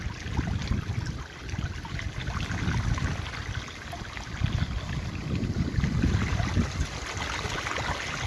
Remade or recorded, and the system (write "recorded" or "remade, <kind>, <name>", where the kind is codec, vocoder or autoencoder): recorded